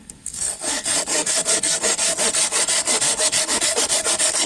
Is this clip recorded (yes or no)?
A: no